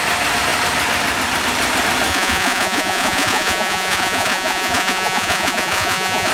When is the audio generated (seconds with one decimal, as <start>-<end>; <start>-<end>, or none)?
2.1-6.3